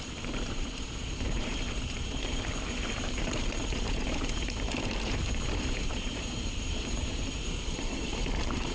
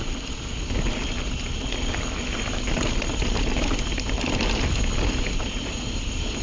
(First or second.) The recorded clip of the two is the second